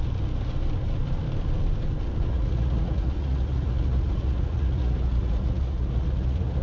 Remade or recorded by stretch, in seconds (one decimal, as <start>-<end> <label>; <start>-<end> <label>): 0.0-2.3 recorded; 2.3-6.6 remade